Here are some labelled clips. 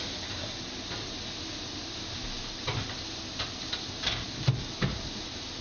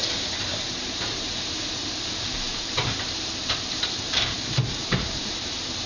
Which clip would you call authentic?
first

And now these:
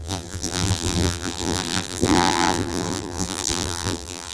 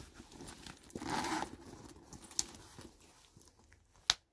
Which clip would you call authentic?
second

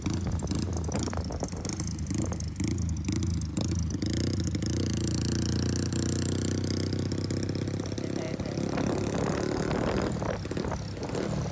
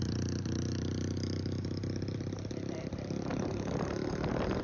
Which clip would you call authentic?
first